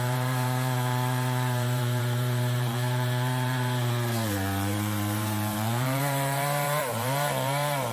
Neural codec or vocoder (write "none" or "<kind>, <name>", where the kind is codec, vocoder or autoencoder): vocoder, BigVGAN v2